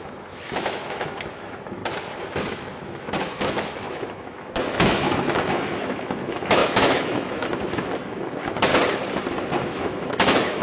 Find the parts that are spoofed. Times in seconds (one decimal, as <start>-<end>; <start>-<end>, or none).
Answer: 0.0-1.8; 2.5-8.7; 9.6-10.6